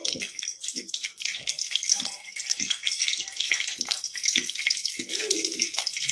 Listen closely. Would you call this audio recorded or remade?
remade